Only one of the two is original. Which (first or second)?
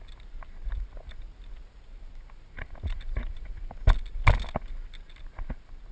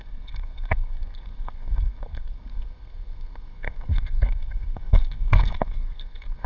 first